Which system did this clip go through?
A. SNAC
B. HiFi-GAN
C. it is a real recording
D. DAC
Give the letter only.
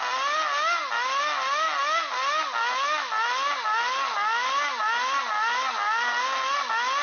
C